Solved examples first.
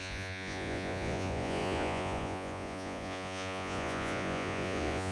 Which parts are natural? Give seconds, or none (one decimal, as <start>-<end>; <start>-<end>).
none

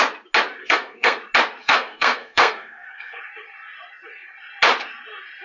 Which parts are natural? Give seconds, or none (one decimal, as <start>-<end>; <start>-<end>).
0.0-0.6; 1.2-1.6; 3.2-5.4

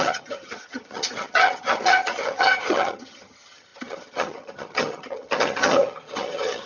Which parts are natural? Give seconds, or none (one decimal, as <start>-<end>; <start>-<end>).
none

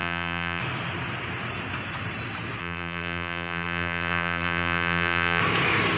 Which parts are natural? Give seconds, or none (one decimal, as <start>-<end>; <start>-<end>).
0.6-2.6; 5.4-6.0

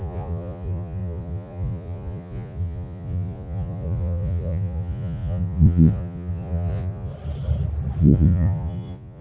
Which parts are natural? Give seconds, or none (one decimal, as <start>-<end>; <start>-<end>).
7.1-8.0

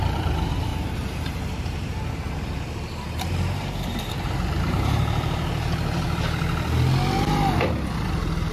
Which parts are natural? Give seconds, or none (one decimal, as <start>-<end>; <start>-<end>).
0.0-0.7; 4.1-8.5